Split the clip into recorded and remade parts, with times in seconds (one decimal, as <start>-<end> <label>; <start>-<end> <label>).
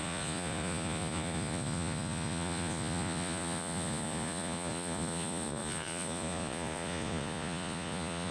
0.0-8.3 remade